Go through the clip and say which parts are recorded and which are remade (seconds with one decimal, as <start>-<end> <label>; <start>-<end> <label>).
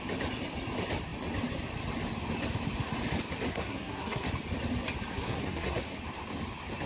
0.0-3.5 recorded; 3.5-4.3 remade; 4.3-5.1 recorded; 5.1-5.8 remade; 5.8-6.9 recorded